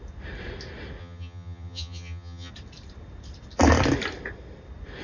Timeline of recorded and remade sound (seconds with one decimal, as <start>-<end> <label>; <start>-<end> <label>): 0.0-1.0 recorded; 1.0-2.5 remade; 2.5-5.0 recorded